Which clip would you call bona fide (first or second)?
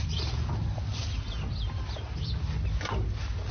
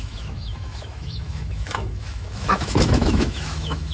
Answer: first